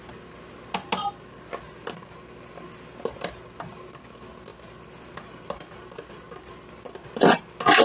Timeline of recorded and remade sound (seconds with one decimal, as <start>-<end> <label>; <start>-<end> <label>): 0.0-7.8 recorded